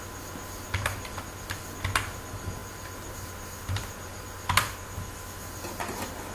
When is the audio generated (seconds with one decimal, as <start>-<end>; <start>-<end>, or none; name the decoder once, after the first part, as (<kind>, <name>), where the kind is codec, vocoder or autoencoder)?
2.6-3.3 (vocoder, BigVGAN v2)